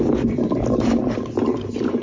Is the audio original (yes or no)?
yes